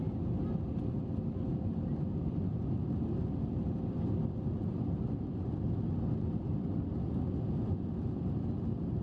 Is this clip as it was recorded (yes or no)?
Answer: yes